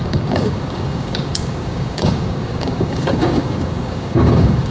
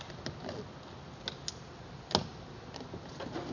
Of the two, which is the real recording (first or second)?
second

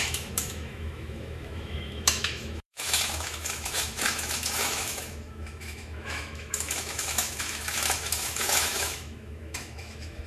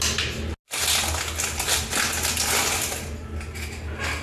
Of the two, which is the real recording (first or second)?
second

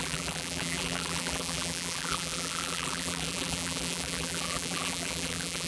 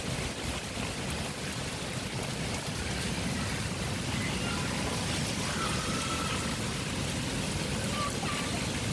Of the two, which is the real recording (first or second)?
second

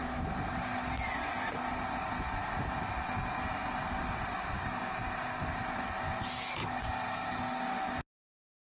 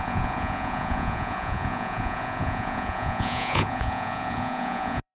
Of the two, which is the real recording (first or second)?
first